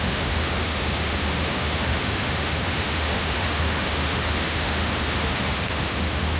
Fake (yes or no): yes